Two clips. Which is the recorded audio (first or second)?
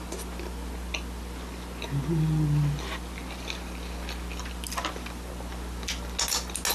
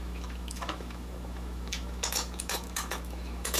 first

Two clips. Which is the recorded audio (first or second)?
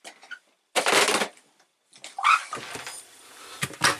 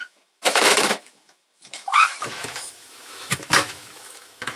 first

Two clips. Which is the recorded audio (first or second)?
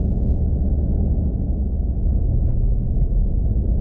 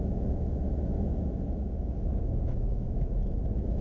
first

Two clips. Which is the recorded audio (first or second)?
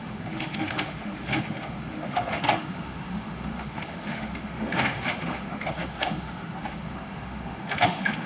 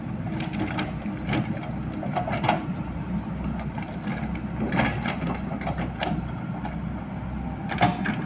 second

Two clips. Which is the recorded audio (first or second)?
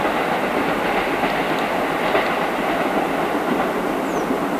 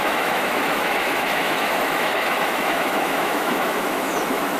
first